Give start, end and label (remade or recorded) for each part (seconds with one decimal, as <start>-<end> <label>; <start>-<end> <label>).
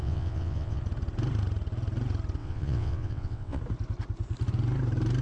0.0-0.8 remade; 0.8-2.4 recorded; 2.4-3.6 remade; 3.6-5.2 recorded